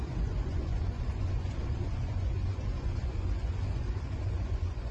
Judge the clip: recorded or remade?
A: remade